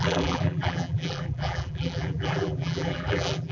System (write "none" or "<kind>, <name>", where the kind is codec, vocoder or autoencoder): vocoder, BigVGAN v2